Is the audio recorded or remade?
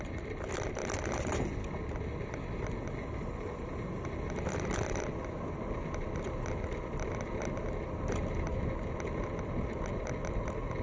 recorded